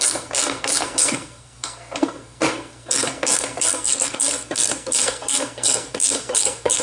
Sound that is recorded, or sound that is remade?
remade